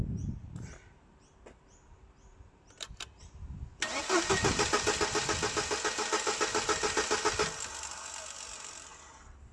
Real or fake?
real